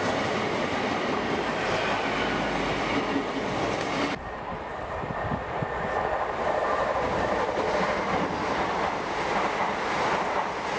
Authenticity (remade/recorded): recorded